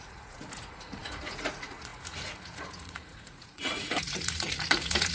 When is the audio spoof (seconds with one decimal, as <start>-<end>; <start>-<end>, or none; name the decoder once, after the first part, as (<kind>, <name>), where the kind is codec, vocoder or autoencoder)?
0.0-5.1 (vocoder, Vocos)